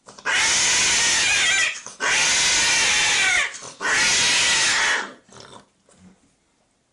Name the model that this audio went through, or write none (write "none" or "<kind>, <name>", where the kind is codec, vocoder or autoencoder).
none